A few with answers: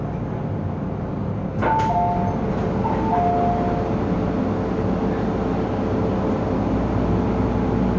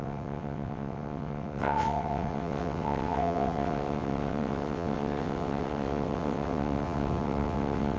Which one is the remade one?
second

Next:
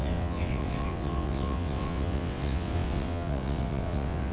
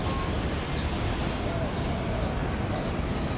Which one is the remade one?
first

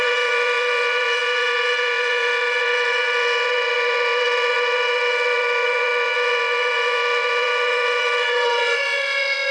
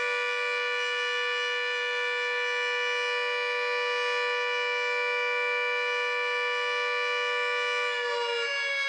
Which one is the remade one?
first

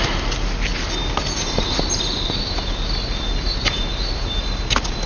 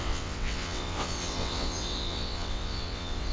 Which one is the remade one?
second